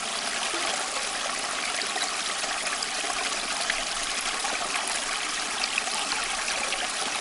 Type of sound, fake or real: real